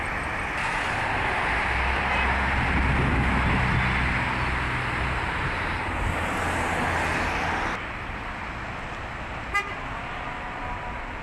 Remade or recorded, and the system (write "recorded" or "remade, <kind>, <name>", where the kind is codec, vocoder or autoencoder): recorded